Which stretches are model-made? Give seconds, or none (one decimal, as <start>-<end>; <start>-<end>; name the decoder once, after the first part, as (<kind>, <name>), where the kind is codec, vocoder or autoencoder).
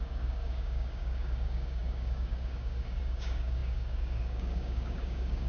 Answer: 0.0-5.5 (codec, DAC)